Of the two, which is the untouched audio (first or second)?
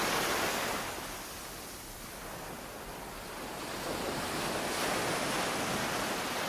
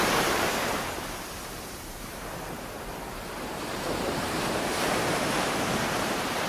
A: first